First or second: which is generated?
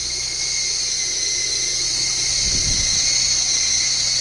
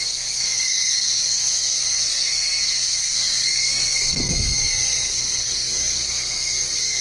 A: second